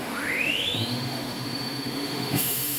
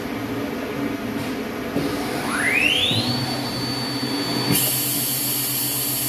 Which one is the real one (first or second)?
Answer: second